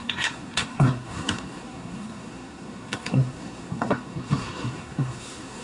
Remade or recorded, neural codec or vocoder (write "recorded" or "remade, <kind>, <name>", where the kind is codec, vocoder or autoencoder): remade, codec, SNAC